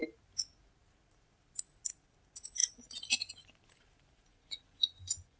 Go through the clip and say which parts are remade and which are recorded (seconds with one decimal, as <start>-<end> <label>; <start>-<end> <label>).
0.0-2.6 recorded; 2.6-3.3 remade; 3.3-4.3 recorded; 4.3-5.4 remade